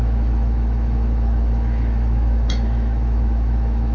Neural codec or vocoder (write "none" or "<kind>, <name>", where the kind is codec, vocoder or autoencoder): autoencoder, DAC-VAE